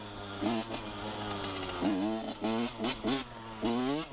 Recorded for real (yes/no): yes